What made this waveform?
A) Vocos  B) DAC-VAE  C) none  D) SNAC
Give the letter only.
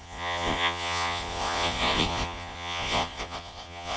A